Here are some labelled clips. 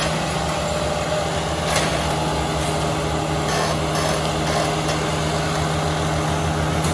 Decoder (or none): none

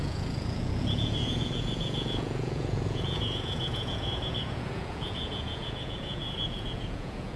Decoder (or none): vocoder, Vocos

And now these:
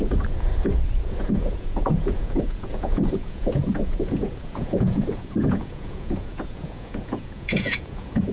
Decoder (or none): vocoder, Vocos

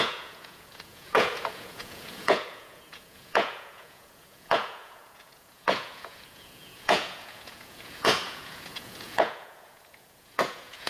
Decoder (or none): vocoder, Vocos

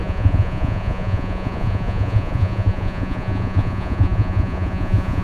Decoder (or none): vocoder, Vocos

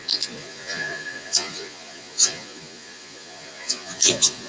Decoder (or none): vocoder, Vocos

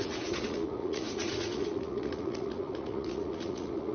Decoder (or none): vocoder, Vocos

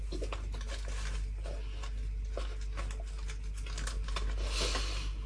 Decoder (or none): none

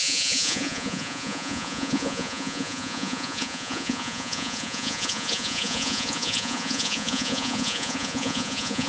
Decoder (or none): vocoder, Vocos